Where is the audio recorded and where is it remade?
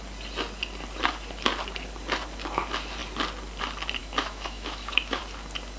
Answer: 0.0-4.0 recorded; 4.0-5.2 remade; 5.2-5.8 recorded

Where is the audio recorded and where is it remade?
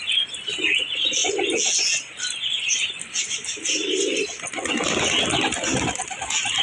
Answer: 0.0-6.6 recorded